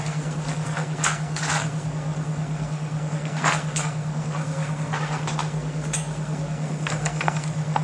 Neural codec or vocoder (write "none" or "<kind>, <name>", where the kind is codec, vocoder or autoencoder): codec, SNAC